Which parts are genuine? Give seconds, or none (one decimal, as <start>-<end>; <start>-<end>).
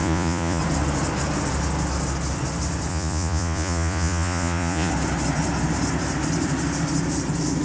0.6-2.9; 4.9-7.6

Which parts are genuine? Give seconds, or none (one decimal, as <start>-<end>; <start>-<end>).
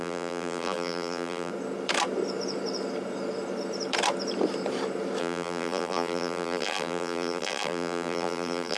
1.5-5.2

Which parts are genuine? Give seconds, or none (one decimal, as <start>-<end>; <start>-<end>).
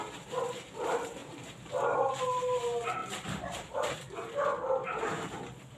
0.0-1.2; 2.6-3.0; 3.9-5.8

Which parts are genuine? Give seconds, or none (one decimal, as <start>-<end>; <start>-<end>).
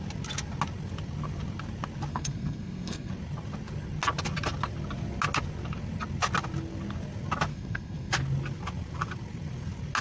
0.0-2.1; 3.1-7.5; 8.1-10.0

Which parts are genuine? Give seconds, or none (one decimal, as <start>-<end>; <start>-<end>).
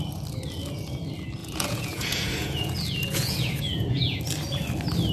0.0-1.4; 4.2-5.1